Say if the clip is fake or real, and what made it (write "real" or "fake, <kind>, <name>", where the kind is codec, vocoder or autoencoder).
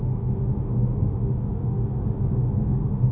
fake, autoencoder, DAC-VAE